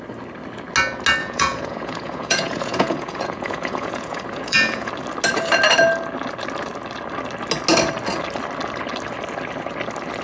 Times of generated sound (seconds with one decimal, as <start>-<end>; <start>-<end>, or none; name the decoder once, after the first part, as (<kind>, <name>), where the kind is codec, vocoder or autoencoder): 1.2-4.9 (vocoder, Vocos)